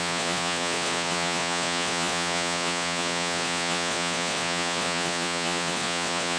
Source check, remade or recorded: remade